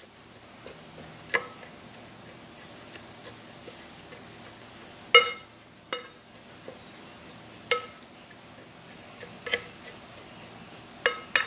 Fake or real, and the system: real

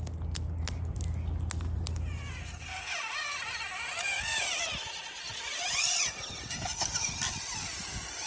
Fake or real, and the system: real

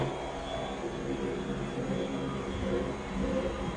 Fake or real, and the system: real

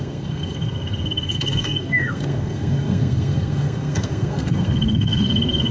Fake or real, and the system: fake, codec, SNAC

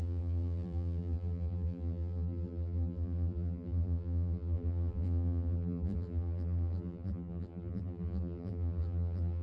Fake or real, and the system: fake, vocoder, BigVGAN v2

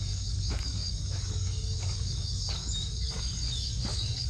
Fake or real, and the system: fake, codec, DAC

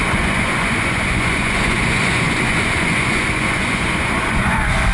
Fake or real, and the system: fake, vocoder, Vocos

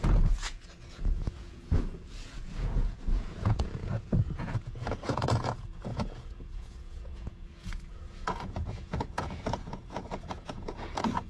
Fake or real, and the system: fake, vocoder, Vocos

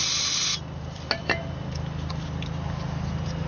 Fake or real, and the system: real